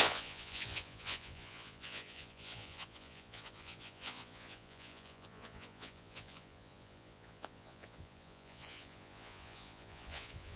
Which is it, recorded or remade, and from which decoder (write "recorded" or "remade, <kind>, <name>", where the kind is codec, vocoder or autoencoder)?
remade, vocoder, Vocos